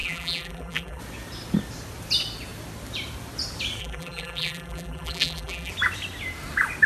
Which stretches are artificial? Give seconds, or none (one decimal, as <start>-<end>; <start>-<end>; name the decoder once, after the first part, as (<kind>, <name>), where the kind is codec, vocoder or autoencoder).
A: 0.0-1.0 (vocoder, BigVGAN v2); 3.8-5.7